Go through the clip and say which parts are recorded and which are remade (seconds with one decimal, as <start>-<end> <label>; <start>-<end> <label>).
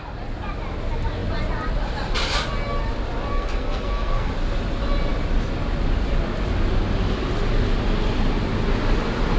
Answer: 0.0-3.3 recorded; 3.3-4.3 remade; 4.3-9.4 recorded